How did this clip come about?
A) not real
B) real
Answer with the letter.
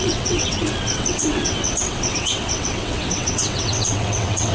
A